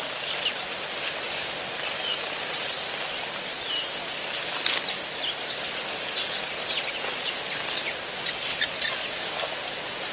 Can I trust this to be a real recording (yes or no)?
yes